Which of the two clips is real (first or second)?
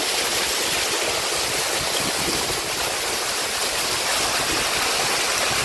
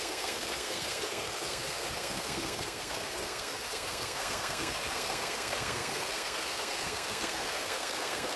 first